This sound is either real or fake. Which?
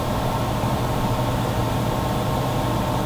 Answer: fake